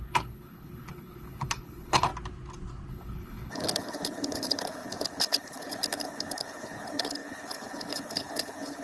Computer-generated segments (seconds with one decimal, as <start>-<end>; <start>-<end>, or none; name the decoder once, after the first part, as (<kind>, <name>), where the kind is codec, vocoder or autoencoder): 0.0-2.1 (codec, HILCodec); 2.9-8.8

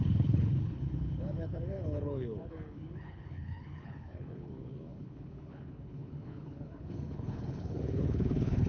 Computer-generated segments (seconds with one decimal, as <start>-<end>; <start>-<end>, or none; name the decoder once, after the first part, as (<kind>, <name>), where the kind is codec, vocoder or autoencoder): 0.0-8.7 (codec, HILCodec)